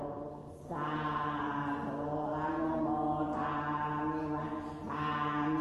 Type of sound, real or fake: real